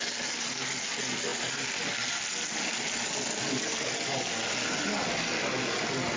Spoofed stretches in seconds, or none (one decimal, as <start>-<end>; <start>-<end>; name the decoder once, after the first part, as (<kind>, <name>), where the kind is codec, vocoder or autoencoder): none